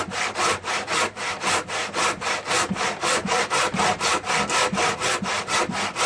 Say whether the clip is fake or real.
real